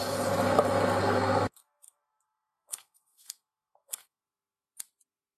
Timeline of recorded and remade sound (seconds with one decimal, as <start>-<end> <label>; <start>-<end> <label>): 0.0-1.0 recorded; 1.0-4.2 remade; 4.2-5.4 recorded